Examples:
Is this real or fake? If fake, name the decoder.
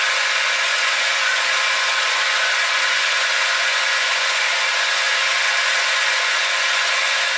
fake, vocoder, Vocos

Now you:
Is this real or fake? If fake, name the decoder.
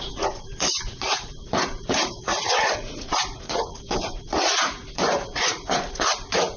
fake, vocoder, Vocos